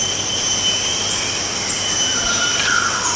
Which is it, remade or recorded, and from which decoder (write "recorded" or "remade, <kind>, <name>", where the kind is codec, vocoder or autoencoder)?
recorded